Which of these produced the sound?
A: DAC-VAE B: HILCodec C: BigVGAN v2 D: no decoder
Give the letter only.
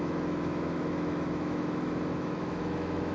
A